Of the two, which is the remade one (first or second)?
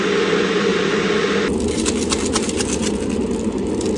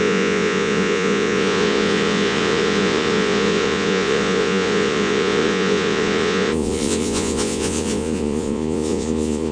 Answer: second